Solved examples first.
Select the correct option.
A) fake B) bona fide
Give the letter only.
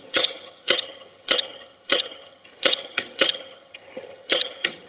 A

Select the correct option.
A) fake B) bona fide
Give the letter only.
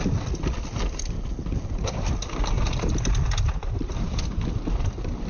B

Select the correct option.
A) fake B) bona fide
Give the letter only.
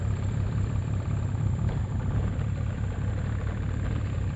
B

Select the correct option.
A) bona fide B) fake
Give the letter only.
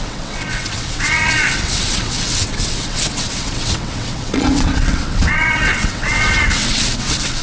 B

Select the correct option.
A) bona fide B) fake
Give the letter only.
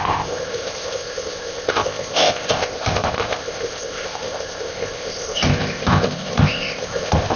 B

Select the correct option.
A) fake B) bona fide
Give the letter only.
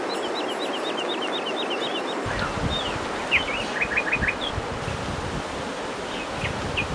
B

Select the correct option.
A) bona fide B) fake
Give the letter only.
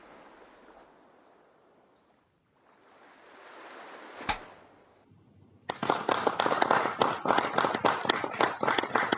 A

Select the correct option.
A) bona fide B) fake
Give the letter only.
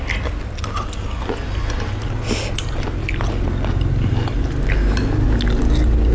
A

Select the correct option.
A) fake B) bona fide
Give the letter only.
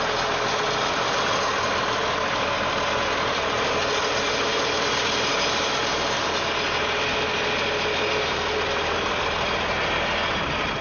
B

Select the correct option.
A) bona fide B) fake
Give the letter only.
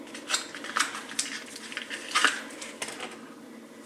A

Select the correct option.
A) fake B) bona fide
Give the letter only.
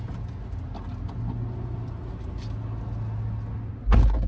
B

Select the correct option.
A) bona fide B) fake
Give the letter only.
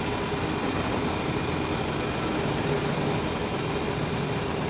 A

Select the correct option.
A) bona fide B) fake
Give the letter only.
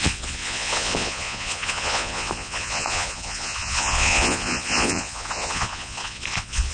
B